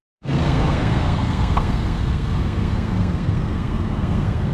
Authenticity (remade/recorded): remade